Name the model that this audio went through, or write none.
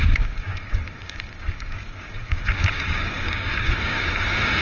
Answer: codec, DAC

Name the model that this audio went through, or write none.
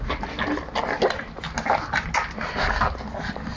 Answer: none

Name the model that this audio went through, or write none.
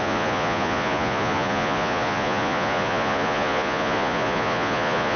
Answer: vocoder, Vocos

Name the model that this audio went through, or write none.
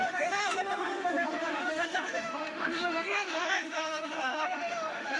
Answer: autoencoder, DAC-VAE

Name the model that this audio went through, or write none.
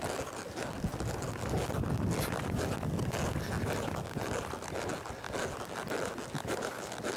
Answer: none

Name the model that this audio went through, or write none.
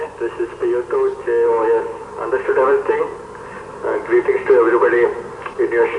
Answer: none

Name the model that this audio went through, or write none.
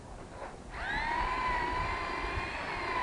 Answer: none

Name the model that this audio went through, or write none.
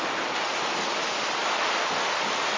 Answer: none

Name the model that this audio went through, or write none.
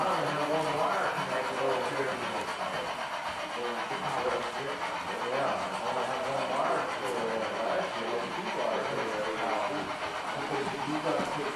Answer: none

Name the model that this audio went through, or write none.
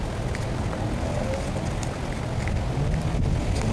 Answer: none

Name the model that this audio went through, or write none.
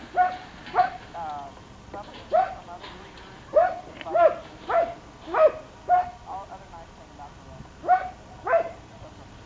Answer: none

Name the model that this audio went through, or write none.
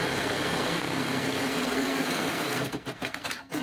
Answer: codec, SNAC